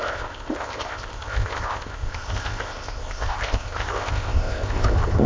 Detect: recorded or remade remade